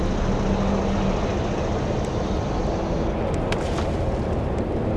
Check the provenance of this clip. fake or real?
real